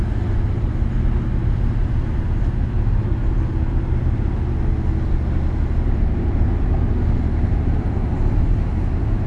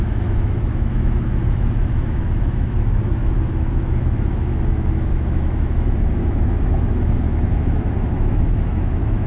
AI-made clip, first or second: second